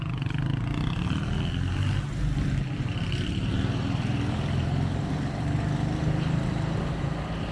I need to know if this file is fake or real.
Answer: real